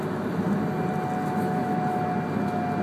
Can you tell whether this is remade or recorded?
recorded